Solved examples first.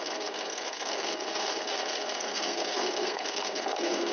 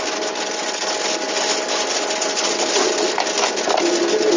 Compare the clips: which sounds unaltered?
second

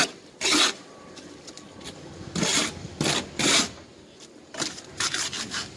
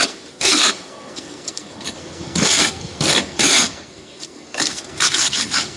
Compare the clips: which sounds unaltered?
first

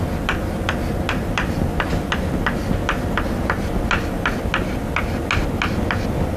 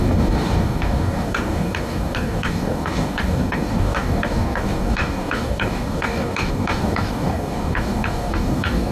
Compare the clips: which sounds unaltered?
first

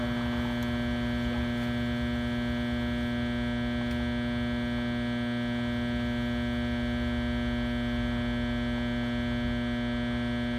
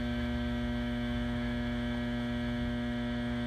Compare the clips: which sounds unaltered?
first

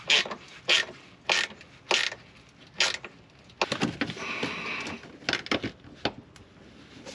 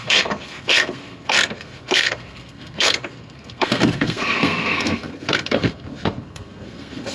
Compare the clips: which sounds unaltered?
first